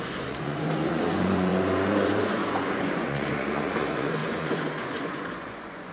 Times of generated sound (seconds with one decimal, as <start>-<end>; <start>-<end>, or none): 0.0-5.9